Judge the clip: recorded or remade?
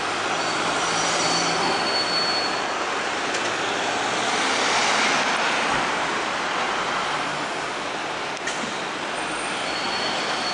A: recorded